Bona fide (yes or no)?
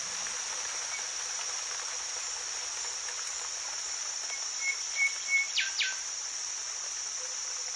yes